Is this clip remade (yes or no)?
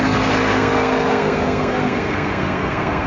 yes